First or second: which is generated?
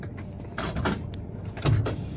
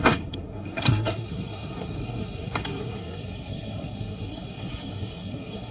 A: second